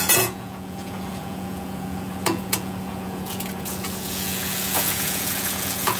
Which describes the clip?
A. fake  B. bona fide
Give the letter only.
A